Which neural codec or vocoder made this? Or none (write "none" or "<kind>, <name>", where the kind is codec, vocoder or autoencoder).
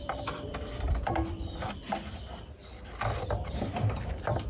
vocoder, BigVGAN v2